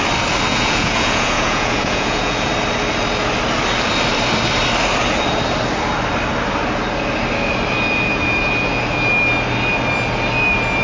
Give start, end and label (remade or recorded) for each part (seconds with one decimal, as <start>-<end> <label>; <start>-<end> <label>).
0.0-0.5 recorded; 0.5-2.5 remade; 2.5-10.8 recorded